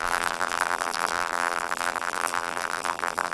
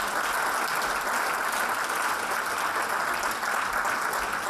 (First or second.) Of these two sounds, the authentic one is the second